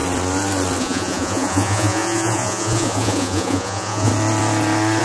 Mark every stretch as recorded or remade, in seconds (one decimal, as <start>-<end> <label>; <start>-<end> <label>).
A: 0.0-0.8 recorded; 0.8-4.1 remade; 4.1-5.0 recorded